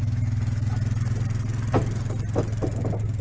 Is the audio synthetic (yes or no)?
no